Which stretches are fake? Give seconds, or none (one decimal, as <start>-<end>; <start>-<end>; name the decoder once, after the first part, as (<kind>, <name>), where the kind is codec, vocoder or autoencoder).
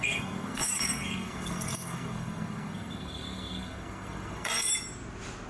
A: 0.0-4.7 (codec, SNAC)